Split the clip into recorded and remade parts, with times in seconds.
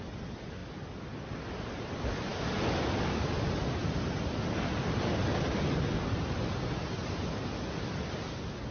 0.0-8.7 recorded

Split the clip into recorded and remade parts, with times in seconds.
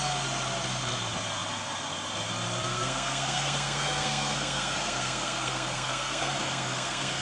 0.0-2.7 recorded; 2.7-7.2 remade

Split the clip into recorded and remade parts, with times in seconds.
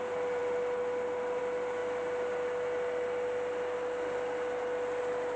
0.0-5.4 recorded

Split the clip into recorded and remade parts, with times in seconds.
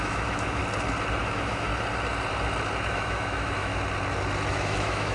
0.0-0.6 remade; 0.6-1.2 recorded; 1.2-1.7 remade; 1.7-2.9 recorded; 2.9-3.7 remade; 3.7-4.5 recorded; 4.5-5.1 remade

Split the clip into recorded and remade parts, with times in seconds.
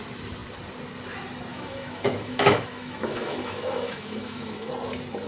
0.0-1.5 recorded; 1.5-4.7 remade; 4.7-5.3 recorded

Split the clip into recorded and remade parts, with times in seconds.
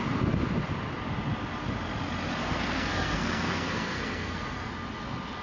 0.0-2.4 recorded; 2.4-4.7 remade; 4.7-5.4 recorded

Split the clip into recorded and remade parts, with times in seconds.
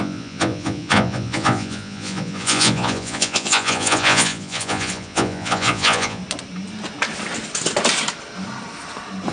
0.0-6.2 remade; 6.2-9.3 recorded